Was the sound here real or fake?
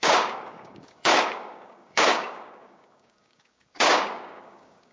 fake